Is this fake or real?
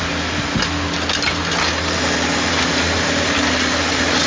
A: real